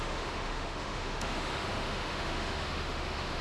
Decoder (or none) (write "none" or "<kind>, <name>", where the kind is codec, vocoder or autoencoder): autoencoder, DAC-VAE